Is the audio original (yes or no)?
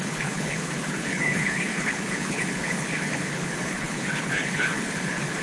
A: no